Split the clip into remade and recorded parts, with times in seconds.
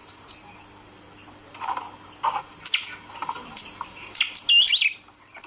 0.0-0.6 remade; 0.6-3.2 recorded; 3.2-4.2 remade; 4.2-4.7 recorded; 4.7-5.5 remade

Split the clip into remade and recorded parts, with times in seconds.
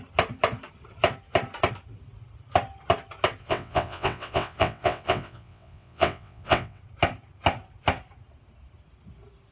0.0-3.4 recorded; 3.4-6.8 remade; 6.8-9.5 recorded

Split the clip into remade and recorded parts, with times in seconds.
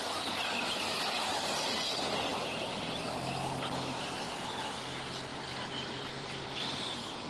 0.0-2.3 recorded; 2.3-2.9 remade; 2.9-5.3 recorded; 5.3-7.3 remade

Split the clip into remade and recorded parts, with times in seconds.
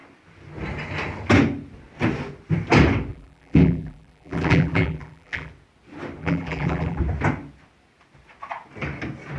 0.0-3.1 recorded; 3.1-5.5 remade; 5.5-6.2 recorded; 6.2-7.0 remade; 7.0-9.4 recorded